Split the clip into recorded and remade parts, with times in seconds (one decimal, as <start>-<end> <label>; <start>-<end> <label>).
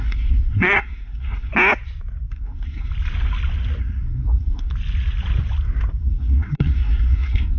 0.0-1.5 remade; 1.5-2.3 recorded; 2.3-2.9 remade; 2.9-3.8 recorded; 3.8-4.7 remade; 4.7-6.0 recorded; 6.0-7.6 remade